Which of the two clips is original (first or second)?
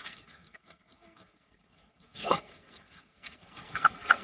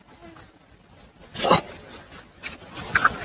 second